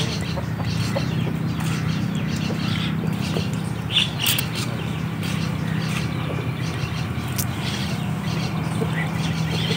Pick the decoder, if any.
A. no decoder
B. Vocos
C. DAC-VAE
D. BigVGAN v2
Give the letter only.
A